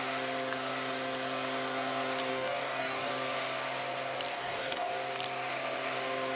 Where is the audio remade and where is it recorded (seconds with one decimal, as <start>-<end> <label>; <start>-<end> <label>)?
0.0-2.3 recorded; 2.3-3.1 remade; 3.1-4.3 recorded; 4.3-4.9 remade; 4.9-6.4 recorded